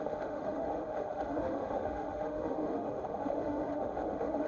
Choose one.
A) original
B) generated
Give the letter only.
B